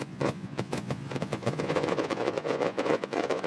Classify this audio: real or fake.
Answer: fake